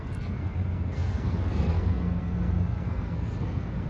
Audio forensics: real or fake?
fake